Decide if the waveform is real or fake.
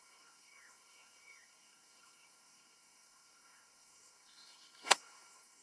fake